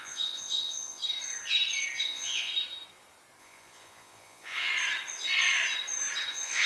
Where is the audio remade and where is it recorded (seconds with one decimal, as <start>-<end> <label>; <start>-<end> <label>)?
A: 0.0-1.0 remade; 1.0-2.0 recorded; 2.0-2.5 remade; 2.5-3.4 recorded; 3.4-4.7 remade; 4.7-6.3 recorded; 6.3-6.7 remade